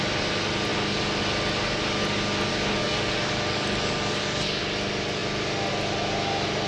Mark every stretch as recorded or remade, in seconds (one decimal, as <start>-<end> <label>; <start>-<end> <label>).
0.0-2.5 recorded; 2.5-4.6 remade; 4.6-6.7 recorded